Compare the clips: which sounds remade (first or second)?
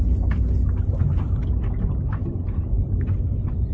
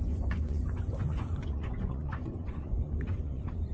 second